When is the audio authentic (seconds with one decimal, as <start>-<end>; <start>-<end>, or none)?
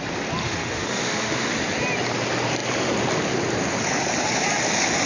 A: 0.0-0.4; 1.5-5.1